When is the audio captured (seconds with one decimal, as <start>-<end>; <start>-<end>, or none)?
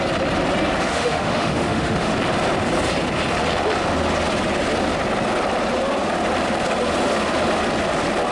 0.0-0.9; 2.1-8.3